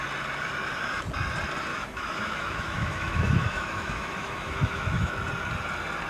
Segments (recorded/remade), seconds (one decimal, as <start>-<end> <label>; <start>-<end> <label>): 0.0-1.7 recorded; 1.7-5.1 remade; 5.1-6.1 recorded